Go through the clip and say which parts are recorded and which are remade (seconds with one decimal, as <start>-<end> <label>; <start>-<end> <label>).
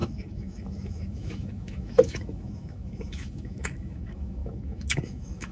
0.0-5.5 remade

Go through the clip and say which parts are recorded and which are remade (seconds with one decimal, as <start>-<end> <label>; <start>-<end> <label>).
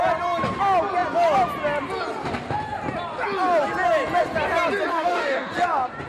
0.0-4.9 recorded; 4.9-5.5 remade; 5.5-6.1 recorded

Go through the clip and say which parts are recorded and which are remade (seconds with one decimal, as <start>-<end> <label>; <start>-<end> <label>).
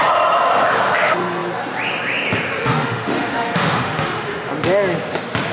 0.0-2.6 recorded; 2.6-4.5 remade; 4.5-5.5 recorded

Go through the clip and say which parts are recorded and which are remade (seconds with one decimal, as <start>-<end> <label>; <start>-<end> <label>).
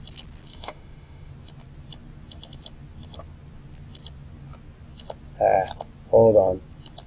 0.0-0.5 recorded; 0.5-1.3 remade; 1.3-7.1 recorded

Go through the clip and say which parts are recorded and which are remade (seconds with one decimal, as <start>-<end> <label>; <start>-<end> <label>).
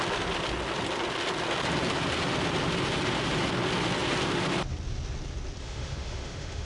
0.0-5.6 recorded; 5.6-6.7 remade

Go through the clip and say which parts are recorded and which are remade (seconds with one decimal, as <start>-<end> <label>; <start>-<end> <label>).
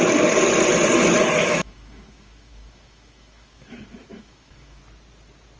0.0-1.4 recorded; 1.4-4.8 remade; 4.8-5.6 recorded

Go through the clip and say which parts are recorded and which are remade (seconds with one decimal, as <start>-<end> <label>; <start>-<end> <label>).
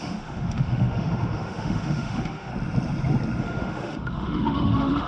0.0-2.5 remade; 2.5-3.4 recorded; 3.4-5.1 remade